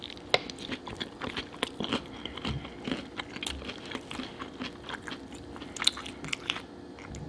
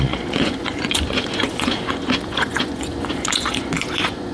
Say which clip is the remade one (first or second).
second